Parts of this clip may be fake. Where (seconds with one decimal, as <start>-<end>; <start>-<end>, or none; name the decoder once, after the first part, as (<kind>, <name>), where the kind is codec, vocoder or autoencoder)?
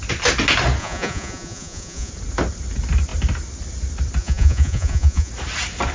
0.8-2.1 (vocoder, Vocos); 4.2-5.3